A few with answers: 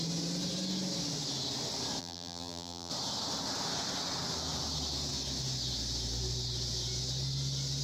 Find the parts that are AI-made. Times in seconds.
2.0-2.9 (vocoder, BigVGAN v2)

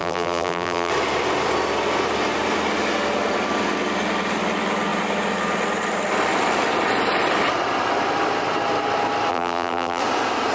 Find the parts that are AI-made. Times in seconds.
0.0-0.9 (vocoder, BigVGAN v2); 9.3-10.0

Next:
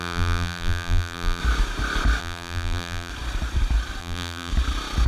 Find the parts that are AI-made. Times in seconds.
0.0-1.4 (vocoder, BigVGAN v2); 2.2-3.1; 4.0-4.5